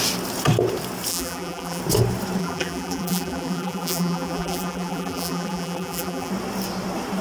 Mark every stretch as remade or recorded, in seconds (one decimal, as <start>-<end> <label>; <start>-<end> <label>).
0.0-1.1 recorded; 1.1-1.8 remade; 1.8-2.4 recorded; 2.4-6.3 remade; 6.3-7.2 recorded